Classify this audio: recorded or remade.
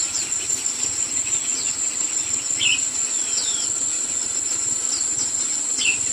recorded